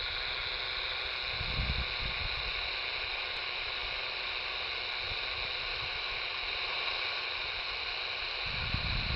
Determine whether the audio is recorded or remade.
recorded